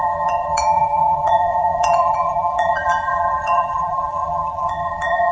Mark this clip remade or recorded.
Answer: remade